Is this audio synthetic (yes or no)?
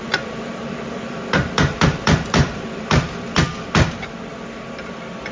yes